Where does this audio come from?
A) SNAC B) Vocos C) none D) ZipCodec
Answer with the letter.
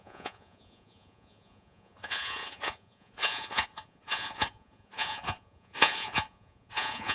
B